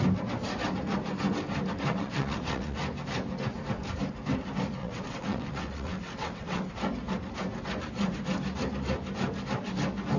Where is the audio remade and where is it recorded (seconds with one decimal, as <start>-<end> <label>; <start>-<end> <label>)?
0.0-1.9 recorded; 1.9-2.8 remade; 2.8-4.8 recorded; 4.8-6.7 remade; 6.7-10.2 recorded